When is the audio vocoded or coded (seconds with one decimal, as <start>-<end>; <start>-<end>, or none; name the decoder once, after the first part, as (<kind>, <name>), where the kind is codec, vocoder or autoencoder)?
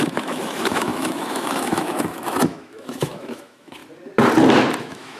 0.0-3.8 (autoencoder, DAC-VAE); 4.8-5.2